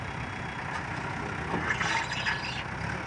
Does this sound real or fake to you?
real